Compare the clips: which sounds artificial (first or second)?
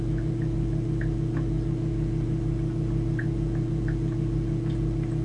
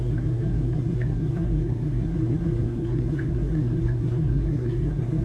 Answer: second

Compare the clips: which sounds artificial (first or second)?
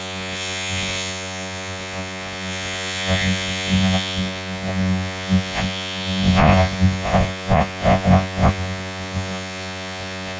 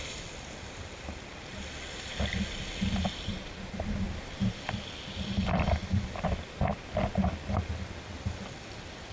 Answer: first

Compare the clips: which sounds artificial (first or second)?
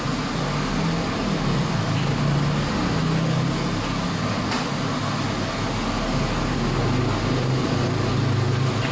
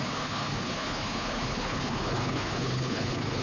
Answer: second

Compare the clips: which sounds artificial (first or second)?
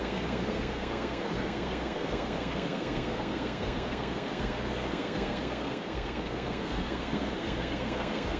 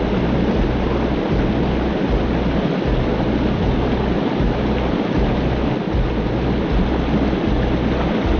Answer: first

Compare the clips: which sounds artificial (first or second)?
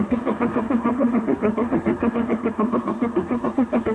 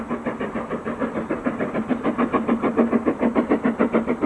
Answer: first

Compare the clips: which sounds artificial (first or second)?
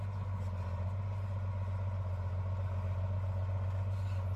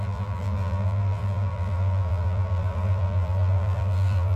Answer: second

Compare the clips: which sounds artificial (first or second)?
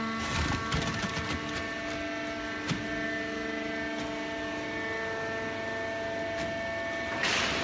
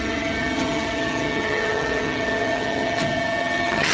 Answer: second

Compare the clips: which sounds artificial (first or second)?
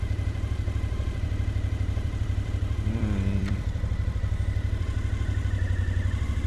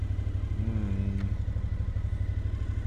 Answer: first